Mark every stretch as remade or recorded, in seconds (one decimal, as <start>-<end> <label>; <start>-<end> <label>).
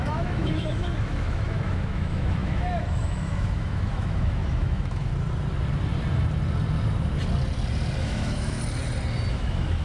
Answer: 0.0-5.1 remade; 5.1-8.0 recorded; 8.0-8.6 remade; 8.6-9.3 recorded; 9.3-9.8 remade